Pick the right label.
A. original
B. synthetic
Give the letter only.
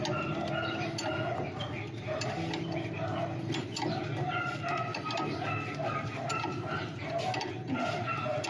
A